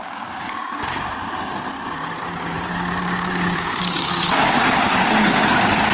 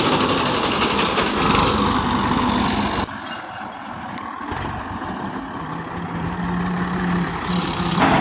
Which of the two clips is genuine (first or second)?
second